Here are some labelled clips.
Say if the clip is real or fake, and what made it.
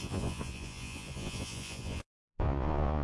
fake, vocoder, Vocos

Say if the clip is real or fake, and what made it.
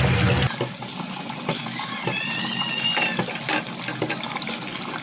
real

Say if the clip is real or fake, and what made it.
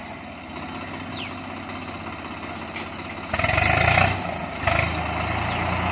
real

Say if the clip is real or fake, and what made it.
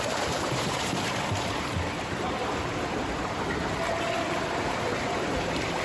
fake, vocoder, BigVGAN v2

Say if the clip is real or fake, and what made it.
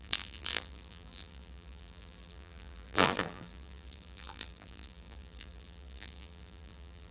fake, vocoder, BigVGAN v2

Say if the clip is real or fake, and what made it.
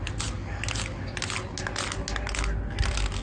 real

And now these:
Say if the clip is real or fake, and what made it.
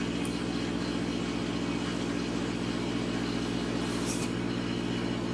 real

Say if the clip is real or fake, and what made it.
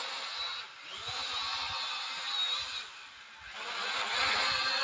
real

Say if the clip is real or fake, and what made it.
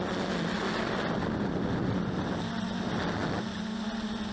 real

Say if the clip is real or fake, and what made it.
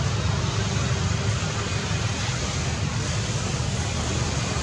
real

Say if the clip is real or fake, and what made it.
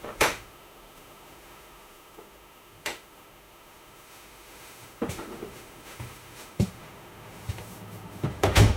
fake, autoencoder, DAC-VAE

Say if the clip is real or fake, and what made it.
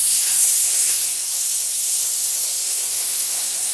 fake, codec, SNAC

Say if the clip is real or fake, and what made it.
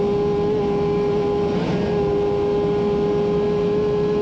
real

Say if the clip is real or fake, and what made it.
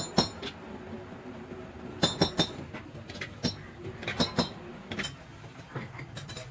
real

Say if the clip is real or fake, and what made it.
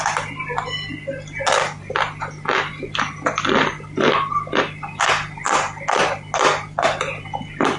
real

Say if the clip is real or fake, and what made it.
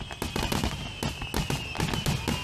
real